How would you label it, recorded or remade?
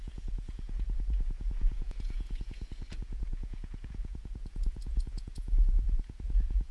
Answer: remade